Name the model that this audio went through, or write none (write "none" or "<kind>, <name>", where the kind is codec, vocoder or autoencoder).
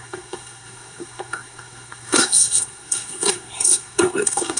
codec, SNAC